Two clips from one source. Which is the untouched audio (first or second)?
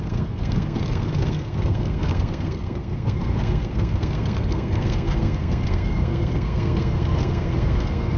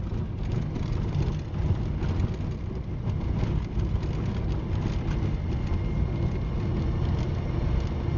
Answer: second